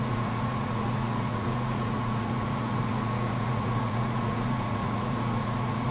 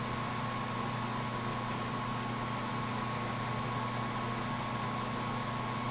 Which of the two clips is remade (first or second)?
first